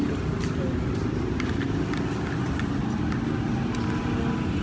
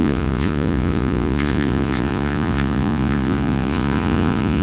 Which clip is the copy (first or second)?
second